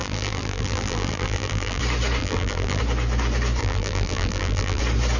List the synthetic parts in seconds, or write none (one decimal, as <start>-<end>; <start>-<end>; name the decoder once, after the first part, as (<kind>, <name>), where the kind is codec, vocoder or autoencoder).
0.0-1.8 (vocoder, BigVGAN v2); 2.2-2.8; 3.6-4.8